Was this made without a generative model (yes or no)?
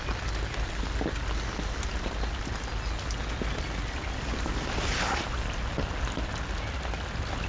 yes